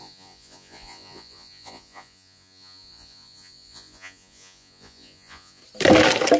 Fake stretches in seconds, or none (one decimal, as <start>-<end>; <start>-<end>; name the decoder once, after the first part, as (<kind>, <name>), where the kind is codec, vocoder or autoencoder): 0.0-5.6 (vocoder, Vocos)